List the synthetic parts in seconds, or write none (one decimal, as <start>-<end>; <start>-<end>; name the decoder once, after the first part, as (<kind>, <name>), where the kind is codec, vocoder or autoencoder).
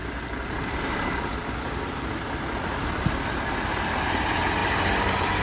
4.6-5.4 (vocoder, BigVGAN v2)